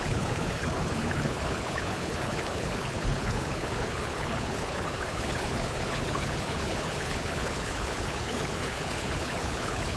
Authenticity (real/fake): fake